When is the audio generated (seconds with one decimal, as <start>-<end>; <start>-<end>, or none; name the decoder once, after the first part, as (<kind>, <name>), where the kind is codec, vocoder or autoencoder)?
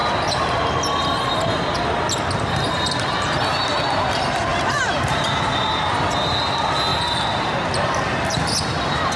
4.5-5.5 (vocoder, BigVGAN v2)